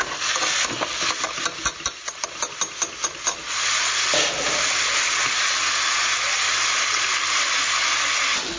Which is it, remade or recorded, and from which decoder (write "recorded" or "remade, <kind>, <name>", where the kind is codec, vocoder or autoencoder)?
recorded